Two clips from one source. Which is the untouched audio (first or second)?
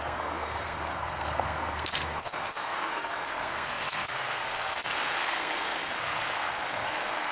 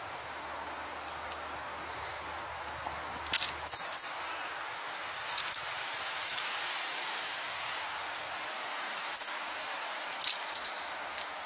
second